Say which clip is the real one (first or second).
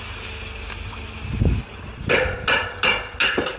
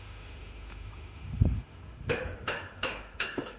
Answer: first